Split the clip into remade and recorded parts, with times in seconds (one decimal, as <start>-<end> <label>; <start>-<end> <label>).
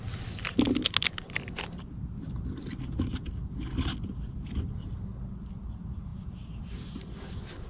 0.0-7.7 recorded